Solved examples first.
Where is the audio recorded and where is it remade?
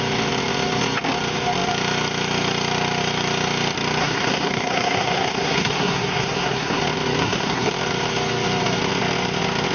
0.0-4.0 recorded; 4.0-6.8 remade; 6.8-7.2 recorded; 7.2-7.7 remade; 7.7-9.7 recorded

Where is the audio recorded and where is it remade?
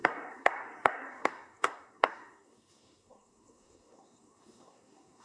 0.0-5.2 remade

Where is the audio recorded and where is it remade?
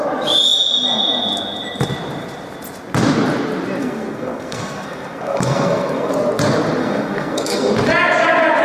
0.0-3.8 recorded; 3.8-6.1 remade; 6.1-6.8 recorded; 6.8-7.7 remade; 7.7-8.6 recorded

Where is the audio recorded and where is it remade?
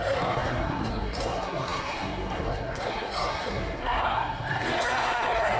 0.0-5.6 remade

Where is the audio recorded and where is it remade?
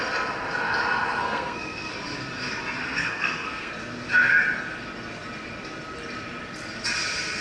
0.0-1.2 recorded; 1.2-1.9 remade; 1.9-2.8 recorded; 2.8-3.7 remade; 3.7-7.4 recorded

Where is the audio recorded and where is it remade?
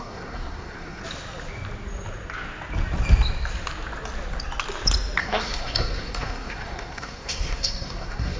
0.0-1.0 remade; 1.0-5.2 recorded; 5.2-8.4 remade